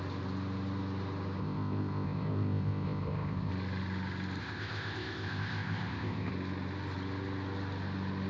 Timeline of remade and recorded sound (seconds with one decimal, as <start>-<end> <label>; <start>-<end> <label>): 0.0-1.4 recorded; 1.4-3.5 remade; 3.5-4.4 recorded; 4.4-6.3 remade; 6.3-8.3 recorded